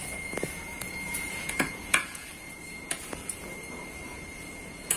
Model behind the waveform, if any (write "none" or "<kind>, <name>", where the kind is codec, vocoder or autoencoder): vocoder, Vocos